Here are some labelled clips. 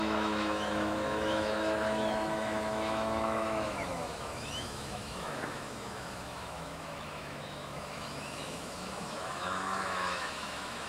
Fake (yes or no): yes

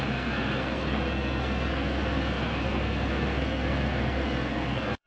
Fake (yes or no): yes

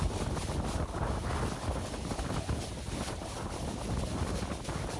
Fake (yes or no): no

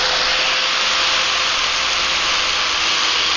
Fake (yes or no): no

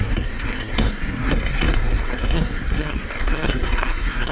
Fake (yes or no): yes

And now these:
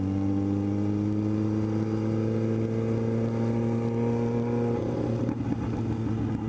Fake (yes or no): no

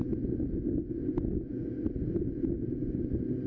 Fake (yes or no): no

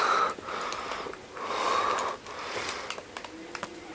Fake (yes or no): no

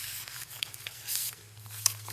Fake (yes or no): yes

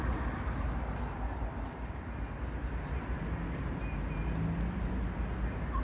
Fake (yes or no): no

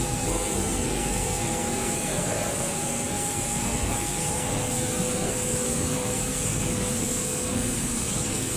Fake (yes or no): yes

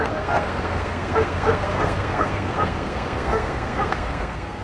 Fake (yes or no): yes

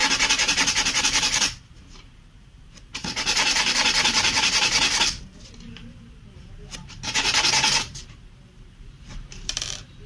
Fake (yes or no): yes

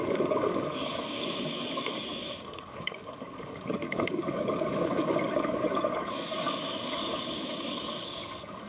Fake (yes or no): yes